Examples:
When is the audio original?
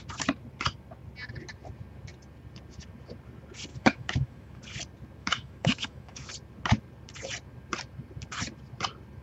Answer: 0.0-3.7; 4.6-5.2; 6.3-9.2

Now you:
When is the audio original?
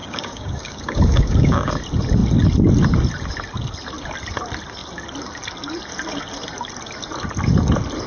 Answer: 1.8-8.1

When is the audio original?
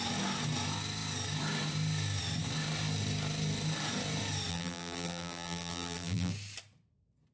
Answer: 0.0-4.5; 6.3-7.3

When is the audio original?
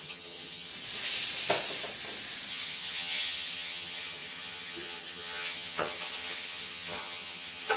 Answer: 0.7-2.5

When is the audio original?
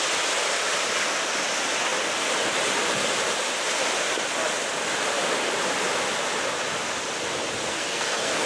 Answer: 0.0-7.7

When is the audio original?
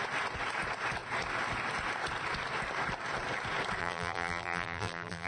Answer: 0.0-3.8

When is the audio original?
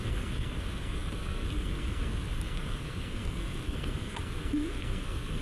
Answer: none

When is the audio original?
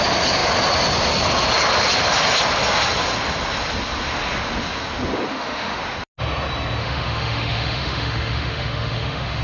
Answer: 0.0-5.3; 5.8-6.8